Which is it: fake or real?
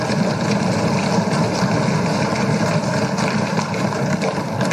real